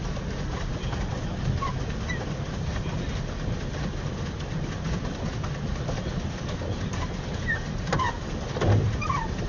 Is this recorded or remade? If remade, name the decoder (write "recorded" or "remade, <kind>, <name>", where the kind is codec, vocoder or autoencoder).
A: remade, vocoder, BigVGAN v2